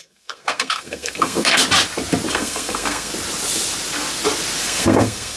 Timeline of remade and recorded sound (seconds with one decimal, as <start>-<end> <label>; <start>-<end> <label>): 0.0-1.6 remade; 1.6-2.3 recorded; 2.3-3.1 remade; 3.1-4.6 recorded; 4.6-5.4 remade